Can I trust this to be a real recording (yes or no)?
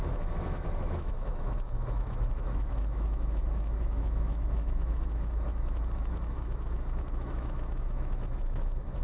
no